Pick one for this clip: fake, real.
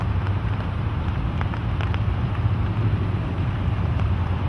fake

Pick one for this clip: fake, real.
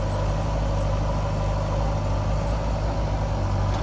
real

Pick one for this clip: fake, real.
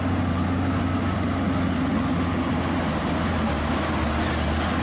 real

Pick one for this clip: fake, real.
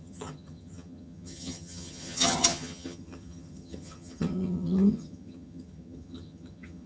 fake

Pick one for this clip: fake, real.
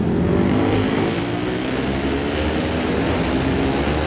real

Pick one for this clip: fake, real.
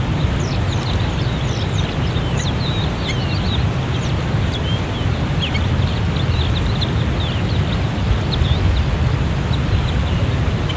real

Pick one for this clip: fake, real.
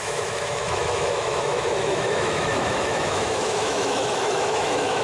fake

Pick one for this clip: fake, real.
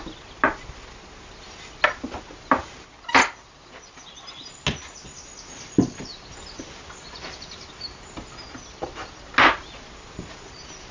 real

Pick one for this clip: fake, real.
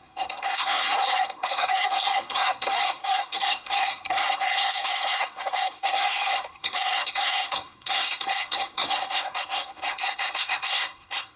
fake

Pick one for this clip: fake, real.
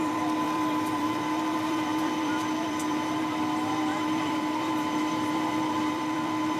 fake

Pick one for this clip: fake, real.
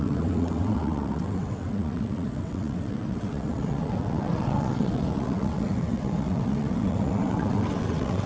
fake